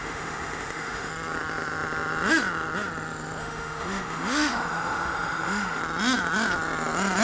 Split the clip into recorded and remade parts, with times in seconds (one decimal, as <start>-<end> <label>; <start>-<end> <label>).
0.0-1.1 remade; 1.1-3.4 recorded; 3.4-5.8 remade; 5.8-7.2 recorded